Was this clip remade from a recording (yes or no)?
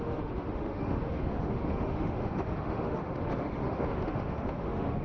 yes